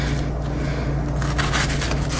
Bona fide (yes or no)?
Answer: yes